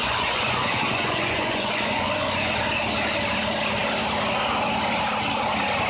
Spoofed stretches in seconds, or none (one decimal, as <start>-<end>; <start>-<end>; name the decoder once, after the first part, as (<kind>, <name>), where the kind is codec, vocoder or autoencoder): 0.0-2.5 (vocoder, Vocos)